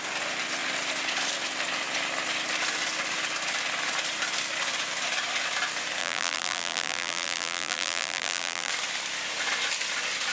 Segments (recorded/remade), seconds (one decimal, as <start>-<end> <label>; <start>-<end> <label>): 0.0-6.0 recorded; 6.0-8.7 remade; 8.7-10.3 recorded